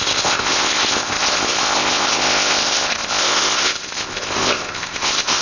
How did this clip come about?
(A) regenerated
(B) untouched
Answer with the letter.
A